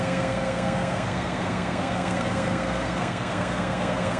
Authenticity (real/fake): fake